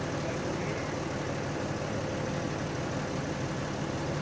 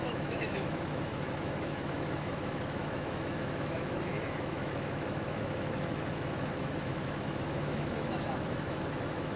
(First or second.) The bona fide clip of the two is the first